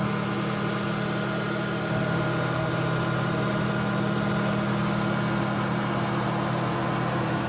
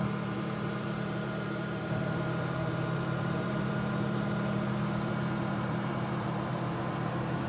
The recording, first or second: first